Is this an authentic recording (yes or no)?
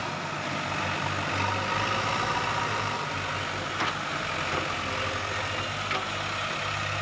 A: yes